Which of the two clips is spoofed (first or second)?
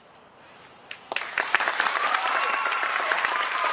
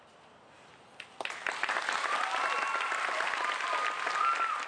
first